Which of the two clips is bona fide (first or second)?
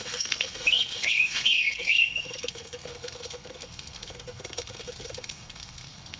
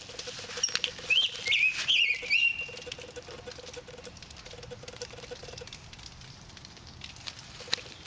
second